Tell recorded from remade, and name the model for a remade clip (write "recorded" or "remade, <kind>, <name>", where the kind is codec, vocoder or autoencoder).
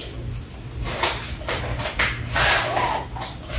recorded